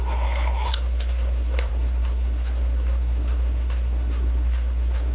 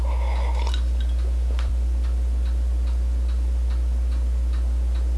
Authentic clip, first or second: second